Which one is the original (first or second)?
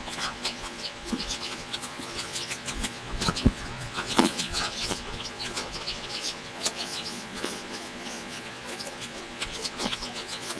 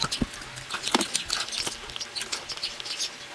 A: second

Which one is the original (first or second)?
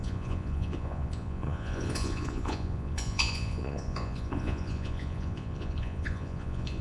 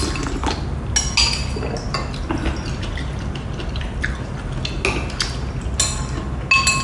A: second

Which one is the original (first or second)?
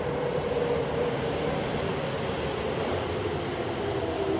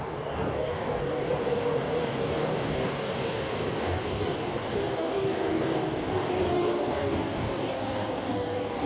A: first